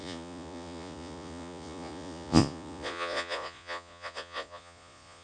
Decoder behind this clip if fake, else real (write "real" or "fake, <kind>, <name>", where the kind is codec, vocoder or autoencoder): fake, vocoder, Vocos